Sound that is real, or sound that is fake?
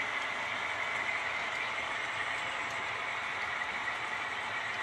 real